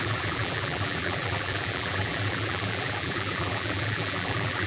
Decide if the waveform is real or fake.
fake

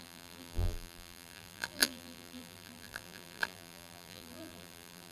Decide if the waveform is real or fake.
fake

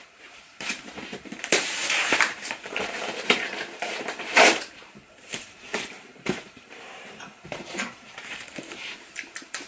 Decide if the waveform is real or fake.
fake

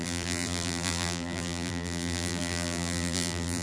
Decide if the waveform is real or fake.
fake